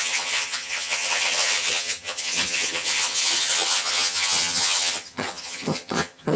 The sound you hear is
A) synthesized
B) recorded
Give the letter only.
A